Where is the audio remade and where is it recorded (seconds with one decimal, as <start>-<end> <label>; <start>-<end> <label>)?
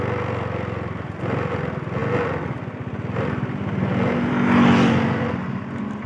0.0-6.1 recorded